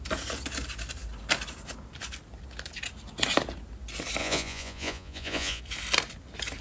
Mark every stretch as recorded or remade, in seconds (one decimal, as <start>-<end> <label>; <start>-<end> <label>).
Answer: 0.0-4.2 recorded; 4.2-5.6 remade; 5.6-6.6 recorded